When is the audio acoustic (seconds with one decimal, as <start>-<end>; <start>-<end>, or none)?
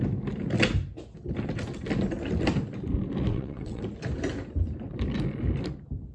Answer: 0.0-3.3; 3.8-6.1